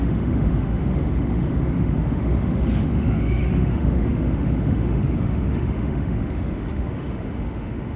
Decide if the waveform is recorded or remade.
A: remade